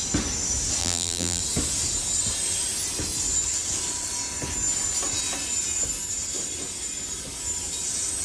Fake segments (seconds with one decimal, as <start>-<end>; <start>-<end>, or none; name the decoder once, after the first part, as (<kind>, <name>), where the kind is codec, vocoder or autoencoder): 0.8-1.4 (vocoder, BigVGAN v2)